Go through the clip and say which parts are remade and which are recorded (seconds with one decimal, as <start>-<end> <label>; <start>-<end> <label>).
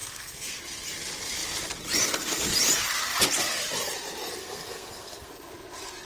0.0-0.6 remade; 0.6-4.4 recorded; 4.4-5.3 remade; 5.3-6.0 recorded